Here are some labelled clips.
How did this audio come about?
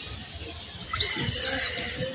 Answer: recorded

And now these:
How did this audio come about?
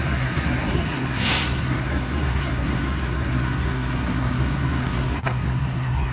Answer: remade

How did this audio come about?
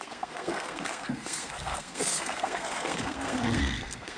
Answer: remade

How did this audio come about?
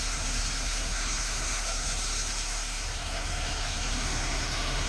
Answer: remade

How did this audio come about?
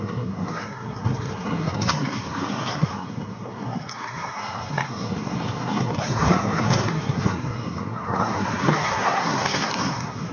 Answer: remade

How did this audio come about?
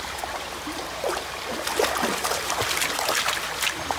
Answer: recorded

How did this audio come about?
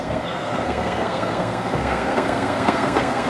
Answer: remade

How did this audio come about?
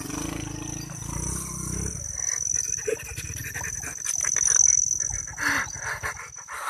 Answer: recorded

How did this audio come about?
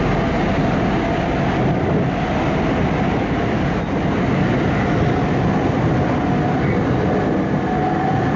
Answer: recorded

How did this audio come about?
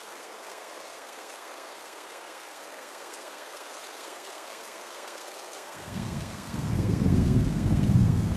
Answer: remade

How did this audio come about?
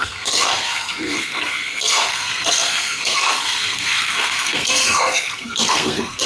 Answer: remade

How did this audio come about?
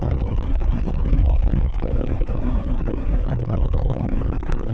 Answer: remade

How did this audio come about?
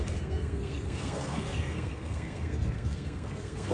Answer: remade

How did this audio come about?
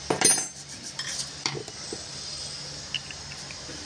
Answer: recorded